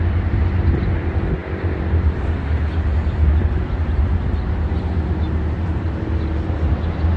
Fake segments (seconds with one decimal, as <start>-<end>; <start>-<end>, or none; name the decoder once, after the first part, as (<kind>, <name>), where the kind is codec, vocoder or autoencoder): none